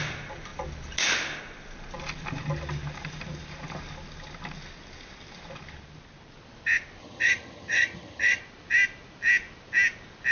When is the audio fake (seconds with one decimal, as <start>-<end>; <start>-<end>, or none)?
7.0-8.4